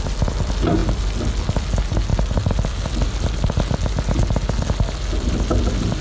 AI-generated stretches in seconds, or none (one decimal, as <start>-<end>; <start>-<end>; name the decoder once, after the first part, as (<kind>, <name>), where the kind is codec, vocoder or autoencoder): none